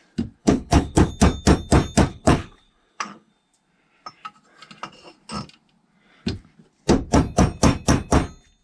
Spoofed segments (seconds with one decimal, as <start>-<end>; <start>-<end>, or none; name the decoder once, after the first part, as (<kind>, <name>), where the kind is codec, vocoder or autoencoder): 0.4-1.1 (codec, HILCodec); 2.1-3.3